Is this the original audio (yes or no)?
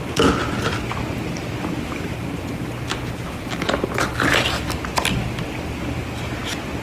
yes